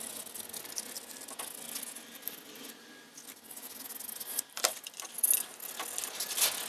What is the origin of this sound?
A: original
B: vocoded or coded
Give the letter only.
A